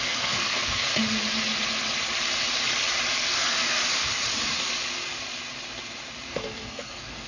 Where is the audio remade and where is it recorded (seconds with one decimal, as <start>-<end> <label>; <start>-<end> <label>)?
0.0-0.9 remade; 0.9-3.1 recorded; 3.1-3.8 remade; 3.8-6.3 recorded; 6.3-7.3 remade